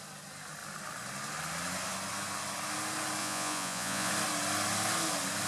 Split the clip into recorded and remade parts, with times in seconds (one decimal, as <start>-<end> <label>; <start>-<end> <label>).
0.0-3.2 recorded; 3.2-4.1 remade; 4.1-5.5 recorded